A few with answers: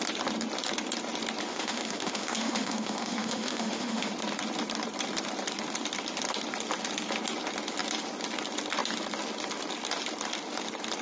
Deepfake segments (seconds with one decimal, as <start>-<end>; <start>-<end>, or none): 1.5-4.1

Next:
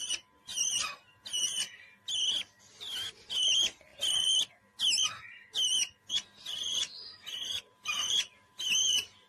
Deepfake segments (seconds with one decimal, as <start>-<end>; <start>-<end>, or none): none

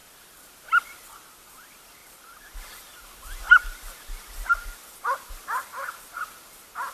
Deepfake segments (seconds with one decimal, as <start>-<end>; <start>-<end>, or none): none

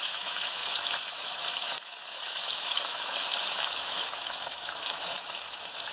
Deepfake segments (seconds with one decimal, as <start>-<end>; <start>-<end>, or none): 0.0-5.9